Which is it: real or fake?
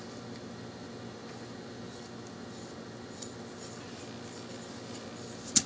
real